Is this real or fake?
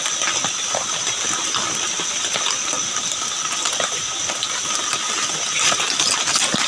real